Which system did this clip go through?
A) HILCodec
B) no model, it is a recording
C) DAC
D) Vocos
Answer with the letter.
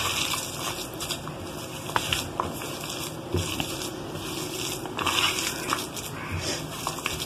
B